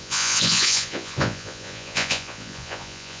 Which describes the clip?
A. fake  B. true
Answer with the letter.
A